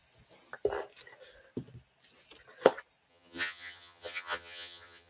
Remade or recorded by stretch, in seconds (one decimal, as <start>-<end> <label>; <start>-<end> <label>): 0.0-3.1 recorded; 3.1-5.1 remade